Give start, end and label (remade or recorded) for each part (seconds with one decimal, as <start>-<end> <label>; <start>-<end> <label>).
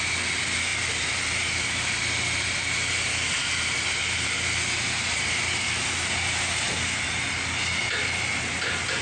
0.0-9.0 recorded